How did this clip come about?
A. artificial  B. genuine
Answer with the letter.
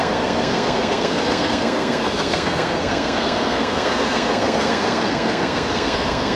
A